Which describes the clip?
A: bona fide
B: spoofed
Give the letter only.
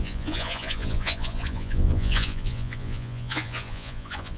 B